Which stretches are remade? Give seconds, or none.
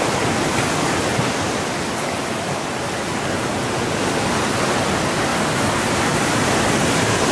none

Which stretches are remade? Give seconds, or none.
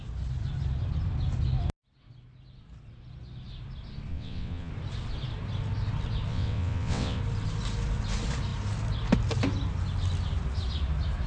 4.1-4.7 (vocoder, WaveNeXt); 6.3-7.2